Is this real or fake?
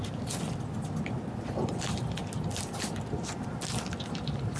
real